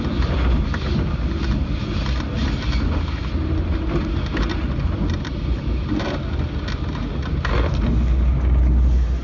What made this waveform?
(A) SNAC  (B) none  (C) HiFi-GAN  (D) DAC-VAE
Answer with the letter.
B